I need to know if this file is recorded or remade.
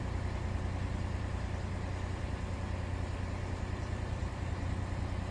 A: recorded